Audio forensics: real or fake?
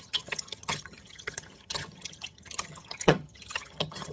fake